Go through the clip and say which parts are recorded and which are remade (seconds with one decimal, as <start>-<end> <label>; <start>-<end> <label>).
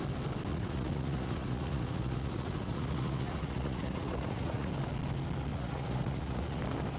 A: 0.0-0.5 recorded; 0.5-4.7 remade; 4.7-5.5 recorded; 5.5-6.6 remade; 6.6-7.0 recorded